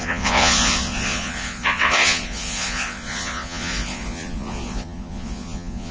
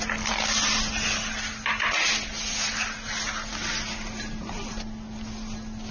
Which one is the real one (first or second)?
second